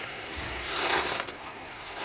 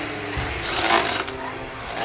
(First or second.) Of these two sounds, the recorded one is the second